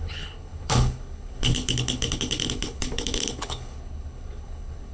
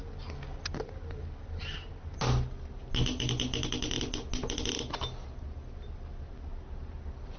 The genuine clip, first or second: second